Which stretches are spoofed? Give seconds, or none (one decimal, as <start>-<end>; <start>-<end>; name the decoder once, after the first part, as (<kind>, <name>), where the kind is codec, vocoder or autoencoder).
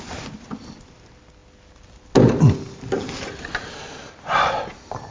none